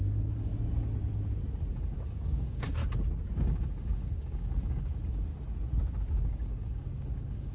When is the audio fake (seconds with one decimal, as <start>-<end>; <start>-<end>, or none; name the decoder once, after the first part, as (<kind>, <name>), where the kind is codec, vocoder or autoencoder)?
0.0-0.5 (codec, DAC); 1.7-2.8; 3.4-5.3; 6.1-7.5